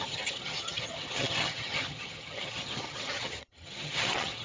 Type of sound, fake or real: fake